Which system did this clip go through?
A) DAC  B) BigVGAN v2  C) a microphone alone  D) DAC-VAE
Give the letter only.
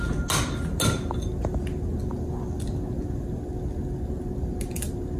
C